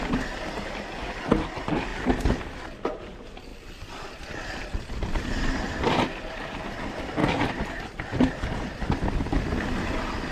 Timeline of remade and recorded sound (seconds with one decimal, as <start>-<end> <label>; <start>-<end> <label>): 0.0-1.9 recorded; 1.9-2.6 remade; 2.6-3.5 recorded; 3.5-6.8 remade; 6.8-7.2 recorded; 7.2-9.4 remade; 9.4-10.3 recorded